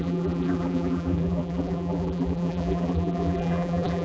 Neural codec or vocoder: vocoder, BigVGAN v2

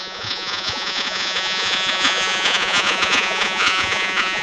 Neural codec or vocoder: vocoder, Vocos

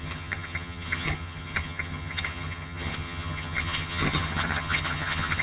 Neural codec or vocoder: vocoder, HiFi-GAN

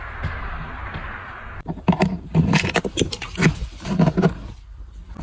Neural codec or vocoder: vocoder, BigVGAN v2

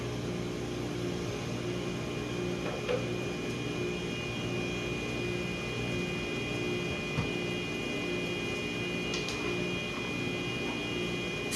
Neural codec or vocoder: none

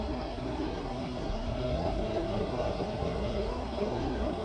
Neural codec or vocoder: codec, SNAC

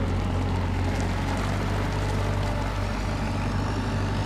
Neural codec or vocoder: none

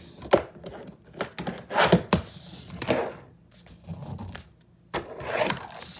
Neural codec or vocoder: none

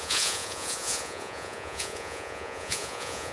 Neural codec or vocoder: vocoder, Vocos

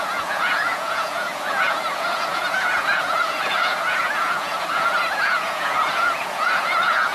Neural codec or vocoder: vocoder, Vocos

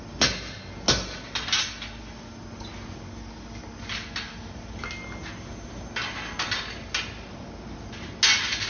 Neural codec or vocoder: none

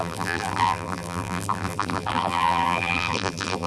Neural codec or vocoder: vocoder, BigVGAN v2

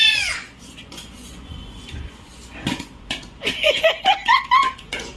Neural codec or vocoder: vocoder, Vocos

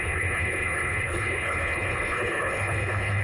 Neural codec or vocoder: codec, HILCodec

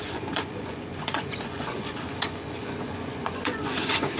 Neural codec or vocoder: vocoder, Vocos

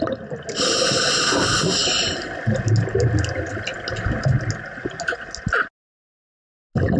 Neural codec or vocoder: none